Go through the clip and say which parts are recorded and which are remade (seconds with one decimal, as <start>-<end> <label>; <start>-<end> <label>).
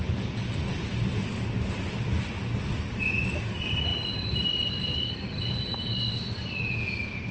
0.0-7.3 recorded